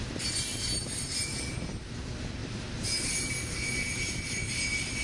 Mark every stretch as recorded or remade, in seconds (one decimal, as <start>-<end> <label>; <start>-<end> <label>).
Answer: 0.0-2.4 recorded; 2.4-3.3 remade; 3.3-5.0 recorded